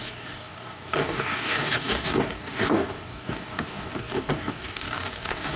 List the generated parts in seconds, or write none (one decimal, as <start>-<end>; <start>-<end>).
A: 0.0-5.6